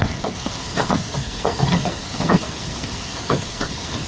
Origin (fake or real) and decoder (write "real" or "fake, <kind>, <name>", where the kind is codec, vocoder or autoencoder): fake, codec, SNAC